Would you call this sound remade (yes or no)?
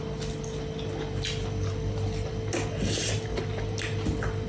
no